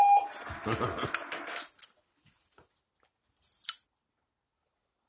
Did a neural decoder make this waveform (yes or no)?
no